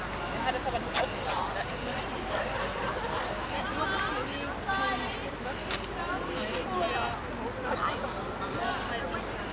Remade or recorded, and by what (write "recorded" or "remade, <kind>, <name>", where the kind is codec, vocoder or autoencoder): recorded